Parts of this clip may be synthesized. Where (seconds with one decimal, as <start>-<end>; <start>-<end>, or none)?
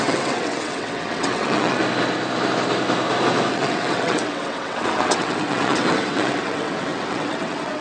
0.0-1.8; 3.5-7.8